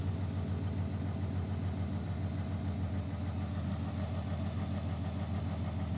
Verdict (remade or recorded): recorded